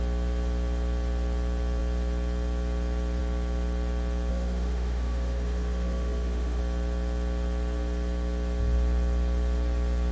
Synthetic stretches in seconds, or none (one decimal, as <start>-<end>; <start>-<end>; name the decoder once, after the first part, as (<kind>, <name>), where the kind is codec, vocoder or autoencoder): 4.3-6.6 (autoencoder, DAC-VAE)